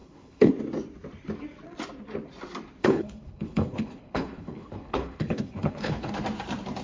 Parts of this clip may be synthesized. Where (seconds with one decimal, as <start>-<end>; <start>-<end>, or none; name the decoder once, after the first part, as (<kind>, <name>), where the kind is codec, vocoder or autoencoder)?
0.0-0.5 (codec, HILCodec); 2.8-6.1